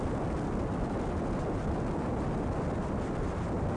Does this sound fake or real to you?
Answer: real